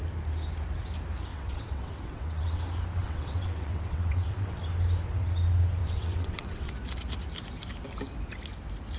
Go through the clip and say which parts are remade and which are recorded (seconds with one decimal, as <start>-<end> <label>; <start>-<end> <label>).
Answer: 0.0-1.3 recorded; 1.3-2.6 remade; 2.6-3.0 recorded; 3.0-4.6 remade; 4.6-5.8 recorded; 5.8-6.7 remade; 6.7-9.0 recorded